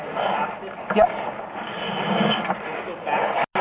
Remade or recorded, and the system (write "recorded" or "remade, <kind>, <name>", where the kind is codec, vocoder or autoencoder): recorded